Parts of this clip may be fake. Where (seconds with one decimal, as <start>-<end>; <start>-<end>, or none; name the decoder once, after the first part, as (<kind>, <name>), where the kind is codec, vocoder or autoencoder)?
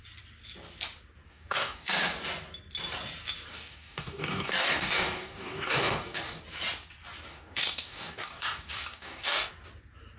1.3-1.9 (codec, DAC); 3.5-6.4; 7.3-9.5